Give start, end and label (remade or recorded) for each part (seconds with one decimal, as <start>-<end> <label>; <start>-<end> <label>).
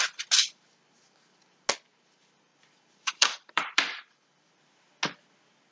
0.0-2.5 recorded; 2.5-4.5 remade; 4.5-5.7 recorded